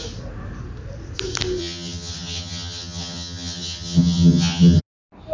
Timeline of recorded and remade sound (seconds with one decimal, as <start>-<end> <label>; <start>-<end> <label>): 0.0-1.6 recorded; 1.6-4.8 remade; 4.8-5.3 recorded